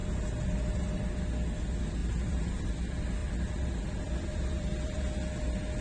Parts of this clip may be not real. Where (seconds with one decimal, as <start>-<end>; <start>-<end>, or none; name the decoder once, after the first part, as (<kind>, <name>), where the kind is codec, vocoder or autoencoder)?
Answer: 2.0-2.7 (vocoder, BigVGAN v2); 3.2-3.7; 4.3-5.0